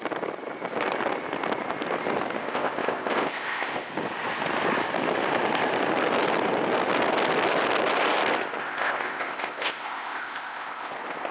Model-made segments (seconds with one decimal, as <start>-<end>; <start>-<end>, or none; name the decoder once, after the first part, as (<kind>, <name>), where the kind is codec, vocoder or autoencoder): 2.4-3.9 (codec, ZipCodec); 8.6-10.9